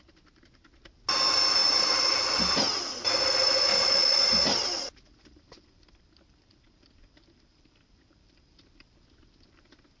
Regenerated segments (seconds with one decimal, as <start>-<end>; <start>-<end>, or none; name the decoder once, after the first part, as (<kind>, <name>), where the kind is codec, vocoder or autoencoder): 3.7-4.3 (vocoder, Vocos)